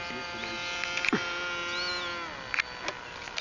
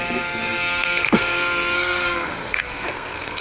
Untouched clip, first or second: first